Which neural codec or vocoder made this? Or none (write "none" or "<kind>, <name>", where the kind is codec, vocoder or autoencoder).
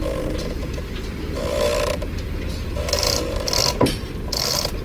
none